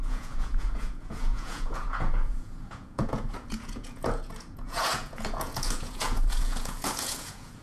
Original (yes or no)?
no